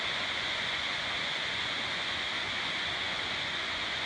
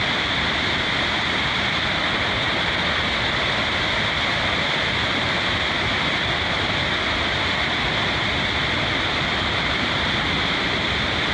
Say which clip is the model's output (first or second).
first